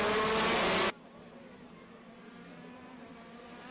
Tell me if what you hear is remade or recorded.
recorded